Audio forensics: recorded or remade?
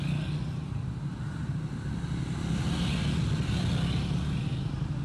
recorded